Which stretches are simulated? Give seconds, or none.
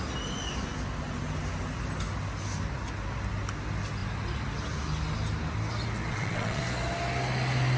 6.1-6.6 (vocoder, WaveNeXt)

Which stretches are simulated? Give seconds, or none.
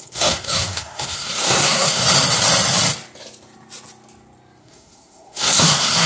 0.0-2.0 (codec, SNAC); 4.6-6.1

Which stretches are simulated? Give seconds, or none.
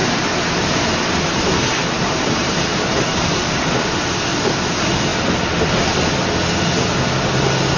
0.0-3.7 (vocoder, BigVGAN v2)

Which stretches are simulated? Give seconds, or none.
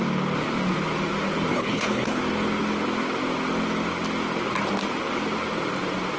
1.5-2.2 (codec, HILCodec)